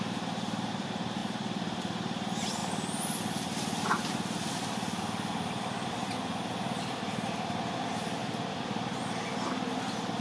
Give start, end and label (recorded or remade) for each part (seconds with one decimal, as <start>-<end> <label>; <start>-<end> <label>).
0.0-2.6 recorded; 2.6-6.1 remade; 6.1-8.2 recorded; 8.2-9.0 remade; 9.0-10.2 recorded